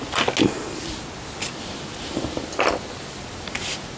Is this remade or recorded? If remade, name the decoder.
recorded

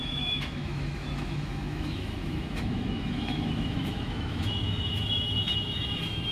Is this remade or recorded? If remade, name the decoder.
remade, autoencoder, DAC-VAE